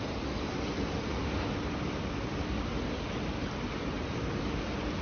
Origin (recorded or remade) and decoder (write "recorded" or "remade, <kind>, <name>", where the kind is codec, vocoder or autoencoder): recorded